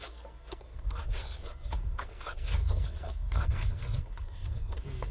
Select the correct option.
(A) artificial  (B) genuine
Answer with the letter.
A